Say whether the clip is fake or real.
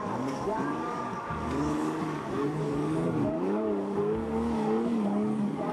fake